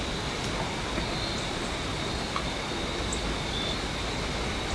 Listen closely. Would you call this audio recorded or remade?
recorded